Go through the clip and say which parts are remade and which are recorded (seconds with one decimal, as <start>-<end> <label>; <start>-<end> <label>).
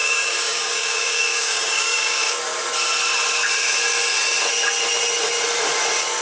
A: 0.0-2.4 remade; 2.4-6.2 recorded